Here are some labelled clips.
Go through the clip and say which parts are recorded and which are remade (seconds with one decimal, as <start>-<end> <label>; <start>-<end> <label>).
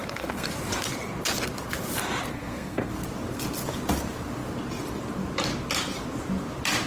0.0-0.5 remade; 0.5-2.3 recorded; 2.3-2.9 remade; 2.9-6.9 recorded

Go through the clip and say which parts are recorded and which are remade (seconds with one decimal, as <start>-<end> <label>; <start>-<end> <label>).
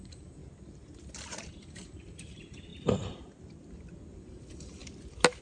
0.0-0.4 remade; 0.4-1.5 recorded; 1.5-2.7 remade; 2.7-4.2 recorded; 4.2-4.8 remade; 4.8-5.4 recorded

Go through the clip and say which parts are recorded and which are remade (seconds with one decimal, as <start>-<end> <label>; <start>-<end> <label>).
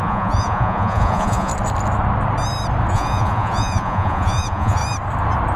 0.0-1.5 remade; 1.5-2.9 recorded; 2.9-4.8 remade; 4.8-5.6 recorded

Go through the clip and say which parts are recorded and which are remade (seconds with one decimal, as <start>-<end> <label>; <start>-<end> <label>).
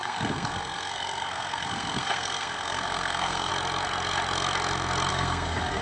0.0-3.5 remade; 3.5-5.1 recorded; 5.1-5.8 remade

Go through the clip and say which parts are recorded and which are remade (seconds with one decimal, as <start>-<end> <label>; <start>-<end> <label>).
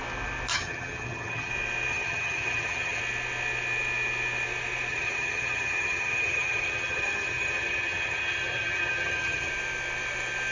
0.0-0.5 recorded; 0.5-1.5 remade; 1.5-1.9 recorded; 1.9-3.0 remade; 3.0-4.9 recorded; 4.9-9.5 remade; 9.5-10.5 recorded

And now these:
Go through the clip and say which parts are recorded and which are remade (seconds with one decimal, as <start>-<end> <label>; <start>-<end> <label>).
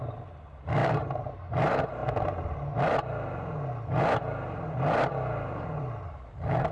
0.0-6.7 recorded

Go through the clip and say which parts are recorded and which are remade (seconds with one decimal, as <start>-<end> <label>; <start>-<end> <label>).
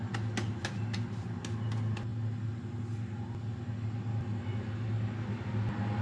0.0-6.0 recorded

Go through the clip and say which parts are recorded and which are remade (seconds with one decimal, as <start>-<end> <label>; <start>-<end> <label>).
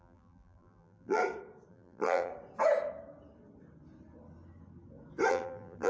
0.0-1.2 remade; 1.2-1.7 recorded; 1.7-2.3 remade; 2.3-5.3 recorded; 5.3-5.9 remade